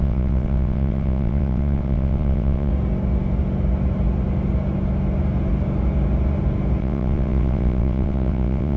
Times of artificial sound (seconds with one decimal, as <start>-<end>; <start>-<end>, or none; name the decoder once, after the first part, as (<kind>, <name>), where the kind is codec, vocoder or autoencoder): 0.0-2.7 (vocoder, WaveNeXt); 6.8-8.8